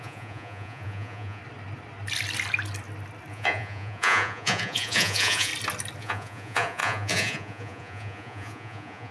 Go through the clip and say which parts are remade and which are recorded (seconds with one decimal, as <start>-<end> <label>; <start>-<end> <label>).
0.0-1.4 remade; 1.4-3.3 recorded; 3.3-5.5 remade; 5.5-6.0 recorded; 6.0-9.1 remade